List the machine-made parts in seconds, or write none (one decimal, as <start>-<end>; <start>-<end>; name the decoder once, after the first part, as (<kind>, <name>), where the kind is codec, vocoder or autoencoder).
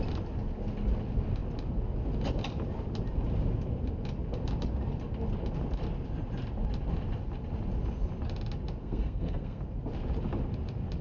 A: 8.8-9.6 (codec, SNAC)